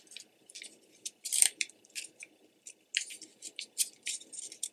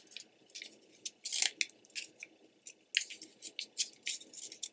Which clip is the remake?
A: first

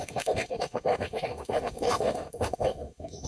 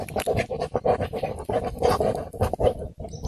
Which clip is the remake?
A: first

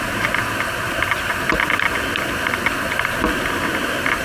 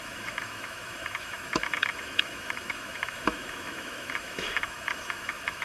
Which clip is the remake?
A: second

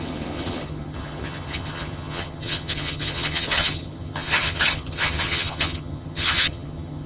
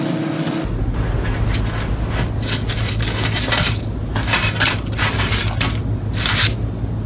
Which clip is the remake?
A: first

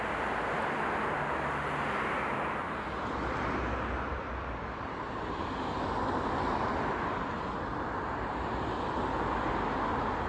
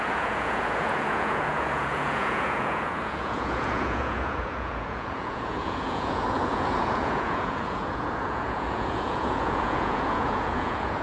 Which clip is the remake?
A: second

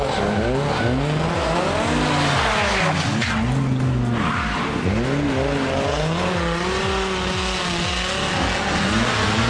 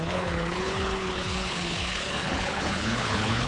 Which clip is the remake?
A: second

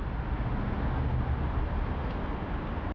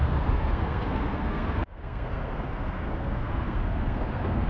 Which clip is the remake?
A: second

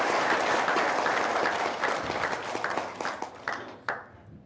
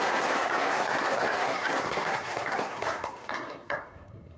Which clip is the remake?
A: second